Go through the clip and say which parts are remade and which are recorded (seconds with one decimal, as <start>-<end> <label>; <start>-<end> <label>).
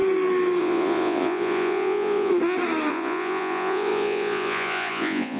0.0-0.6 recorded; 0.6-2.3 remade; 2.3-2.9 recorded; 2.9-5.4 remade